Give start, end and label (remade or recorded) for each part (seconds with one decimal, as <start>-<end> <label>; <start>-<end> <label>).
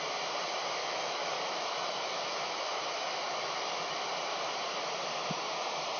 0.0-0.8 recorded; 0.8-4.1 remade; 4.1-6.0 recorded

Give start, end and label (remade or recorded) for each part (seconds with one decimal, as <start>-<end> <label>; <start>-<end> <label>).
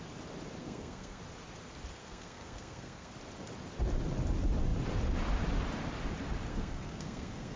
0.0-0.6 recorded; 0.6-1.2 remade; 1.2-2.0 recorded; 2.0-3.1 remade; 3.1-6.5 recorded; 6.5-7.6 remade